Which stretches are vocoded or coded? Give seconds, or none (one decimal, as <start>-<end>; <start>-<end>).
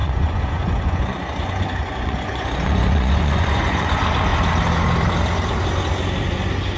0.0-3.9